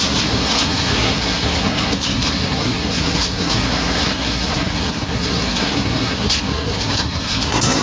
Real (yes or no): no